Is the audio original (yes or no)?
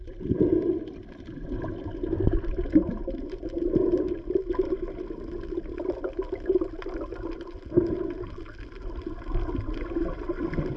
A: yes